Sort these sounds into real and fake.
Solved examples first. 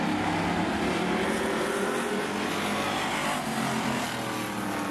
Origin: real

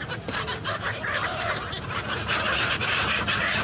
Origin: fake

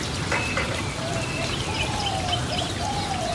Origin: real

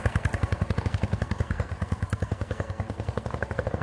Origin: fake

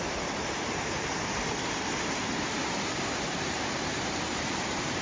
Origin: fake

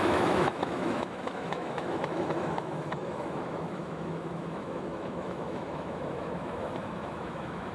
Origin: fake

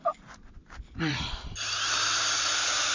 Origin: real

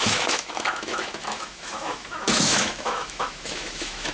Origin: fake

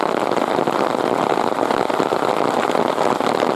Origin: fake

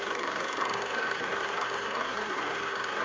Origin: fake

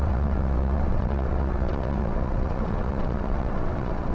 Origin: fake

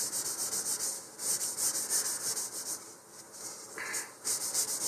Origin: real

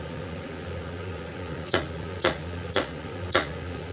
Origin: fake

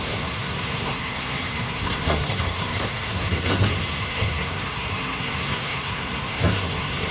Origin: fake